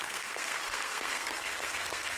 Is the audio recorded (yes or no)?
no